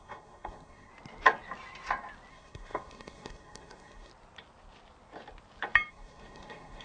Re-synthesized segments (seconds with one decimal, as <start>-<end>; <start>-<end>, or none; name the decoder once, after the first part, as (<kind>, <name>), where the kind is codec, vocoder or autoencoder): 0.0-0.9 (codec, SNAC); 2.3-4.1; 5.9-6.8